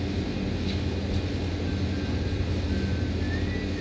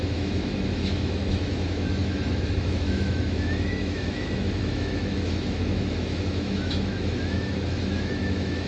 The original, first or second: first